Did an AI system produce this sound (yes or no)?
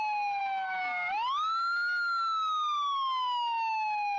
no